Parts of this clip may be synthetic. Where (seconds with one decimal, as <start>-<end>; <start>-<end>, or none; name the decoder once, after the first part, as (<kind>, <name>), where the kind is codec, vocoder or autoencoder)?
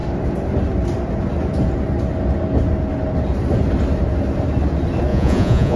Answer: 5.1-5.8 (vocoder, Vocos)